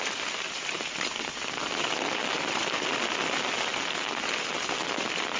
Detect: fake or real real